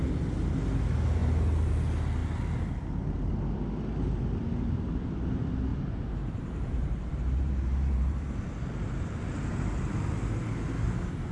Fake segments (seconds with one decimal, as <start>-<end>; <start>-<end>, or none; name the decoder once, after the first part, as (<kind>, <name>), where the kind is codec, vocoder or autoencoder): 5.7-8.3 (vocoder, BigVGAN v2)